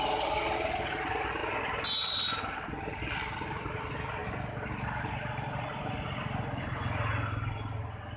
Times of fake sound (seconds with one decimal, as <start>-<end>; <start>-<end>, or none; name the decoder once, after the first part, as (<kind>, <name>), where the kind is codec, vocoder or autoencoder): none